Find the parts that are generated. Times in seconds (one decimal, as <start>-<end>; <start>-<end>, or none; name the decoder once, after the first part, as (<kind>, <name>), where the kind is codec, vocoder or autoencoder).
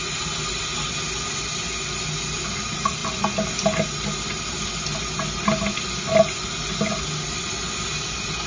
none